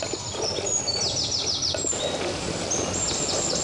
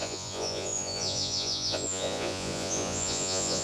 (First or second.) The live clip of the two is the first